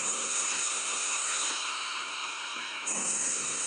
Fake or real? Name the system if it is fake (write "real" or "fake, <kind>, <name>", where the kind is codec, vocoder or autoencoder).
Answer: fake, codec, SNAC